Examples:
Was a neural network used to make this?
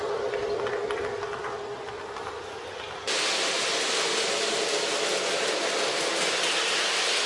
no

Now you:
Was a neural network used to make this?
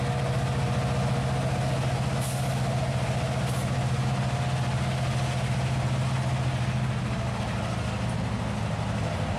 no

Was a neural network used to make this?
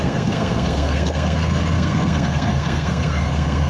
yes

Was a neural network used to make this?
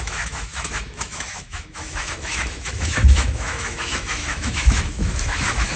yes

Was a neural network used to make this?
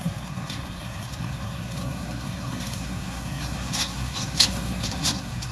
yes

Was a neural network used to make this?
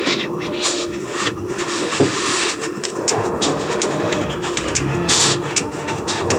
yes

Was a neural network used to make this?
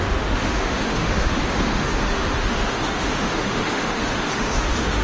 yes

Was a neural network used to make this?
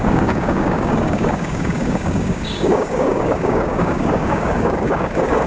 yes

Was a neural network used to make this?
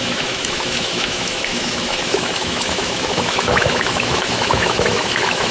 yes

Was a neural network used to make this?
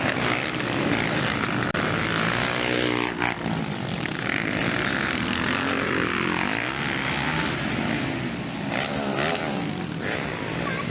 no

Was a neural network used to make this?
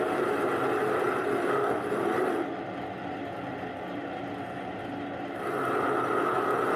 no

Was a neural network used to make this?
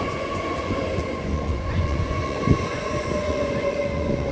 yes